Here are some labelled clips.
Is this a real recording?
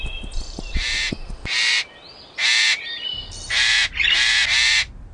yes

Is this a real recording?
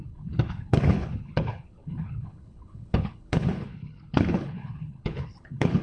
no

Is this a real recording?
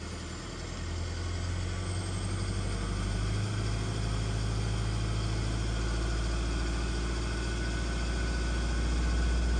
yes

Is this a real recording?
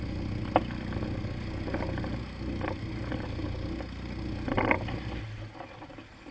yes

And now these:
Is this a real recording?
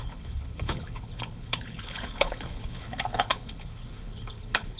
no